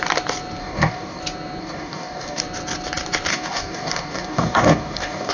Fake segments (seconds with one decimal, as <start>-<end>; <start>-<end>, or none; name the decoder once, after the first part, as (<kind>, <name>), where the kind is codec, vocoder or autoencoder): 0.6-1.2 (codec, DAC); 1.6-2.4; 3.3-5.3